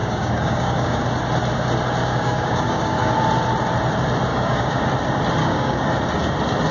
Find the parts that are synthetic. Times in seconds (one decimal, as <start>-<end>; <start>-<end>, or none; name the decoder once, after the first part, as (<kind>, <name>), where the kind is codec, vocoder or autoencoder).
0.0-1.0 (codec, DAC); 2.0-3.1; 4.3-4.8; 5.4-5.9